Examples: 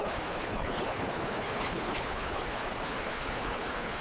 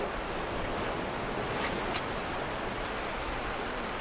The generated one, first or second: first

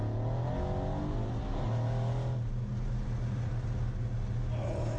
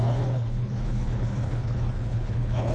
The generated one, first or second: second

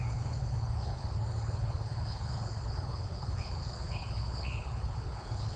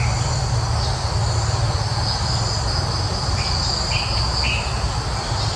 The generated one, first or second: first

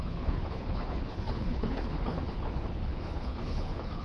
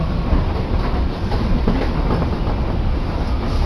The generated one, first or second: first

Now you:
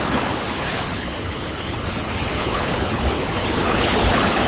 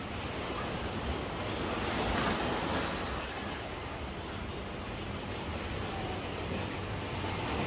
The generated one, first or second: first